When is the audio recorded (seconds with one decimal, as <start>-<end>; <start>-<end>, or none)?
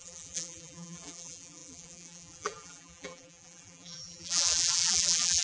none